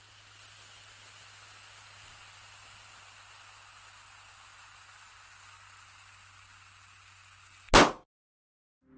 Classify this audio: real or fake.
real